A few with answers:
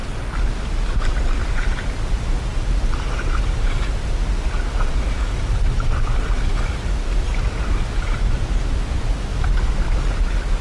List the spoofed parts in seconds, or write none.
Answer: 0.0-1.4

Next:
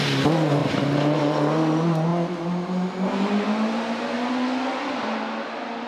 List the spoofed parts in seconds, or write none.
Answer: none

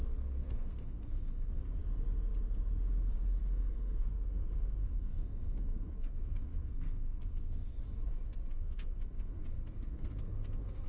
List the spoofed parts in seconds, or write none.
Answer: 0.0-1.8; 3.4-7.8; 8.5-10.9

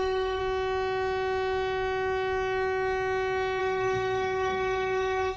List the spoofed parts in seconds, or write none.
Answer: 0.0-0.4; 3.6-5.4

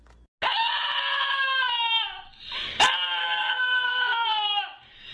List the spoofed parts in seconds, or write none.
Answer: 3.2-3.9

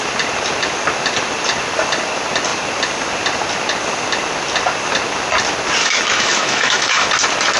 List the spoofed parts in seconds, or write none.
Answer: 5.8-7.1